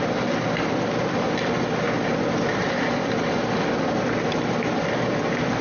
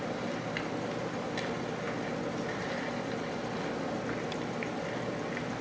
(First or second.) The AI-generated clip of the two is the first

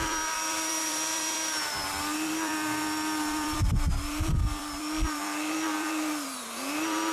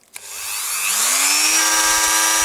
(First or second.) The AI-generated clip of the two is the first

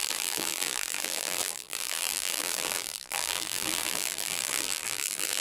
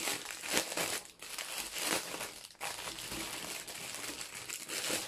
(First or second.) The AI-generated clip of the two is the first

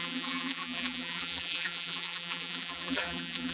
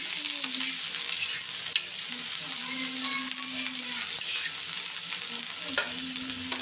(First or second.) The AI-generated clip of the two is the first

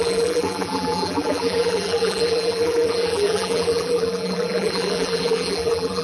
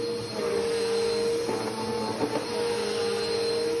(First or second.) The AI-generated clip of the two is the first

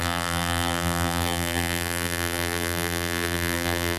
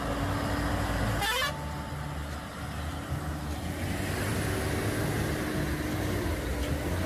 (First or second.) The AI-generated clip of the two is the first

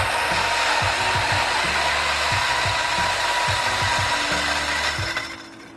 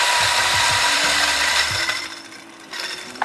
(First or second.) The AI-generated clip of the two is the second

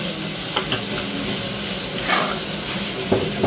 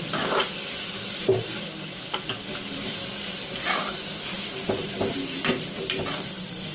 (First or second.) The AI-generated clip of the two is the second